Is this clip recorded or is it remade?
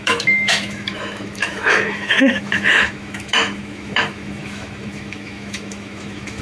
remade